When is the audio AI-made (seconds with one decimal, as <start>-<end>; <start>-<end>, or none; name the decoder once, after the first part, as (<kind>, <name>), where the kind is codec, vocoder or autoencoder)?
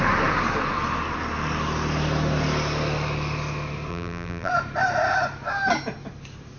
3.9-4.5 (vocoder, BigVGAN v2)